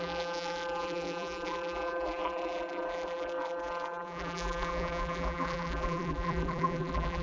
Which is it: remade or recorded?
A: remade